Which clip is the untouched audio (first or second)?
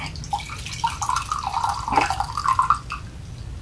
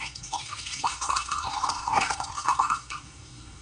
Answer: first